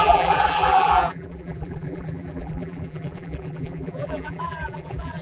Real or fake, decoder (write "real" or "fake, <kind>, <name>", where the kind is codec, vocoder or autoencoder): fake, vocoder, BigVGAN v2